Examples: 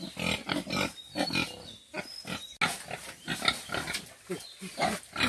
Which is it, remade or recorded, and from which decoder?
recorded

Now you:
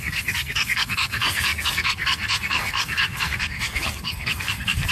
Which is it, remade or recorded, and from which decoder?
remade, codec, SNAC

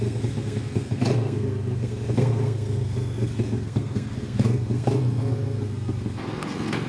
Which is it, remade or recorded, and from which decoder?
remade, codec, SNAC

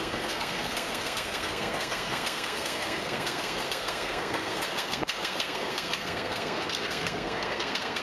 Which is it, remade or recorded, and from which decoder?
remade, codec, SNAC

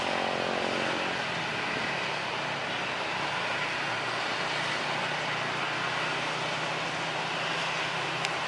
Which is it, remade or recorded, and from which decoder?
recorded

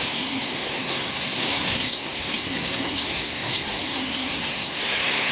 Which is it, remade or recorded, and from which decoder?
remade, codec, SNAC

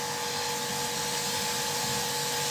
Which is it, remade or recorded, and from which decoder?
recorded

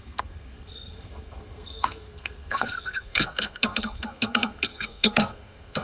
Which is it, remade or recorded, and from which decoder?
remade, codec, SNAC